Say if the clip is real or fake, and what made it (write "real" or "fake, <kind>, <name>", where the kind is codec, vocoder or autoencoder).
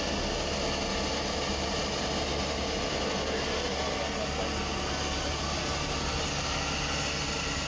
real